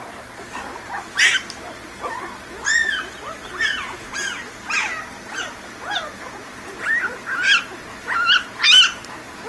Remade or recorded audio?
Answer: recorded